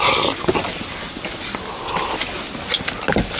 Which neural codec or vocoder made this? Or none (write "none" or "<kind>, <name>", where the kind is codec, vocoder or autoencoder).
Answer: none